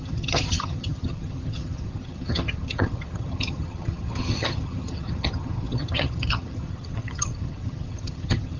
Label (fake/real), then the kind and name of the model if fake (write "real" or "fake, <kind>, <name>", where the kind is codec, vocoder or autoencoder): fake, vocoder, HiFi-GAN